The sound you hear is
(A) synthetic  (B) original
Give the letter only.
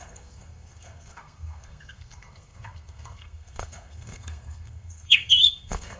A